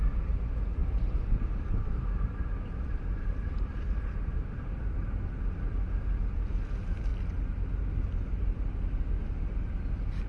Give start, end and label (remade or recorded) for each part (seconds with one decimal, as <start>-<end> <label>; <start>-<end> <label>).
0.0-0.8 recorded; 0.8-5.2 remade; 5.2-10.3 recorded